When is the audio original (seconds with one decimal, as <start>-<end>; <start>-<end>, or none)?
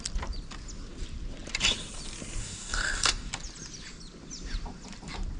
0.0-2.4; 3.3-5.4